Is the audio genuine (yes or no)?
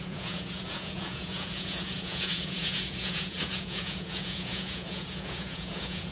no